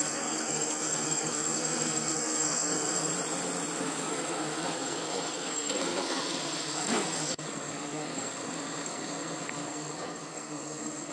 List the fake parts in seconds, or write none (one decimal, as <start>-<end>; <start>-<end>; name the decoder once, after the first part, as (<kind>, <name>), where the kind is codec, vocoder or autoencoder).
0.0-3.1 (codec, SNAC); 3.8-11.1